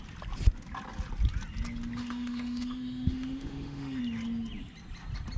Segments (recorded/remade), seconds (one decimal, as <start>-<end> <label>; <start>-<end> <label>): 0.0-2.0 recorded; 2.0-4.0 remade; 4.0-5.4 recorded